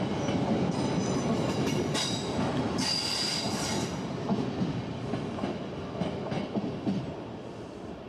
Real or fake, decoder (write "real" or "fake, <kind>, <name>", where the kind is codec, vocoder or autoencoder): real